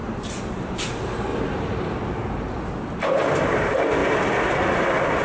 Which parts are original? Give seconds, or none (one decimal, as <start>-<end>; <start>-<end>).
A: 1.3-2.9; 4.0-4.8